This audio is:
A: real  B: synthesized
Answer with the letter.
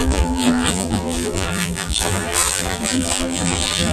B